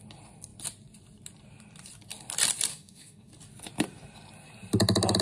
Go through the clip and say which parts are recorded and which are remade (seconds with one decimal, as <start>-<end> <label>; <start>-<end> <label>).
0.0-2.7 recorded; 2.7-3.3 remade; 3.3-5.2 recorded